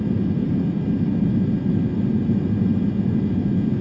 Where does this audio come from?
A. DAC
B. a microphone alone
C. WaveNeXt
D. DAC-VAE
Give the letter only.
B